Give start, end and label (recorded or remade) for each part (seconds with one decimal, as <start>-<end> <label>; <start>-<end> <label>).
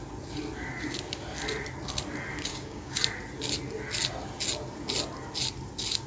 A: 0.0-2.5 recorded; 2.5-3.0 remade; 3.0-6.1 recorded